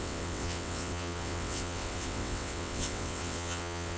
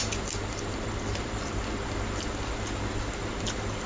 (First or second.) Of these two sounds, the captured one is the second